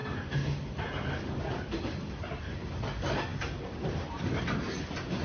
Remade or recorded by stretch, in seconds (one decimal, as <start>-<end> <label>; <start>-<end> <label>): 0.0-5.2 recorded